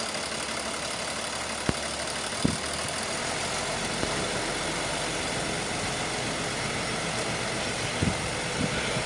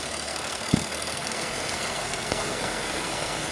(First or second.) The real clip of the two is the first